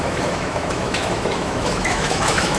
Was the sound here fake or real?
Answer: fake